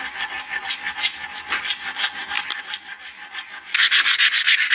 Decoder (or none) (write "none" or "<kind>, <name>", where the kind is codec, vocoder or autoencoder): none